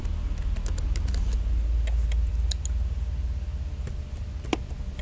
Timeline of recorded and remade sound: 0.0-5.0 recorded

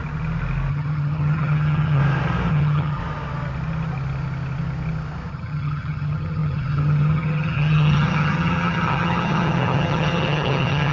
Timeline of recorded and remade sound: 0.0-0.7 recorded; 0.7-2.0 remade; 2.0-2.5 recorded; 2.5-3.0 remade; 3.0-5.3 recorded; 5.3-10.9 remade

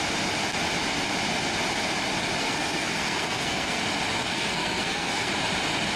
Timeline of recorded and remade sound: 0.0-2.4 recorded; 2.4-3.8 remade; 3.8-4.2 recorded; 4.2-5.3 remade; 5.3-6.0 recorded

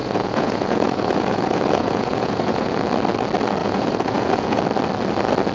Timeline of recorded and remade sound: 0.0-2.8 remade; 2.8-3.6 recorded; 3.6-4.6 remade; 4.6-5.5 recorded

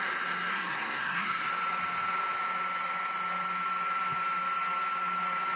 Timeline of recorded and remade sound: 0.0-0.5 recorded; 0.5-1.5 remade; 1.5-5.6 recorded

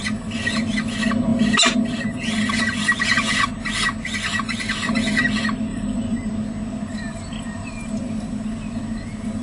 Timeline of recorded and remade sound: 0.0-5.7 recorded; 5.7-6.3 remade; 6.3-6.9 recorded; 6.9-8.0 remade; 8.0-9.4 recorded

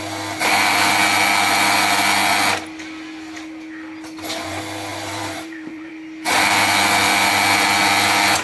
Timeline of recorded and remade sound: 0.0-4.9 recorded; 4.9-5.9 remade; 5.9-8.4 recorded

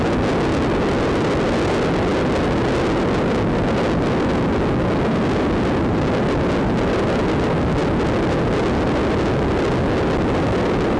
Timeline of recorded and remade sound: 0.0-11.0 recorded